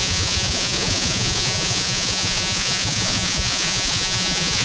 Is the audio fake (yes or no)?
yes